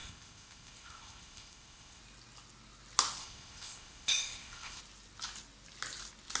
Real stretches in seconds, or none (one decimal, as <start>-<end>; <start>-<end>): 2.0-3.2; 4.8-6.4